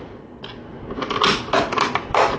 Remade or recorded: recorded